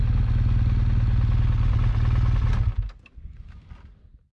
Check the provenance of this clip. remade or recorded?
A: recorded